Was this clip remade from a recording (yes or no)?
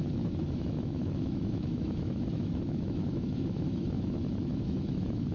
yes